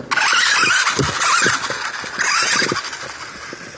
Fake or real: real